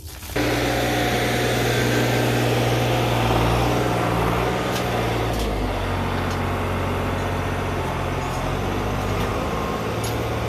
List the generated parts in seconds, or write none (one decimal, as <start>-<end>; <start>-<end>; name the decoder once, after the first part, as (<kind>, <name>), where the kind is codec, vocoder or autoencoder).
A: none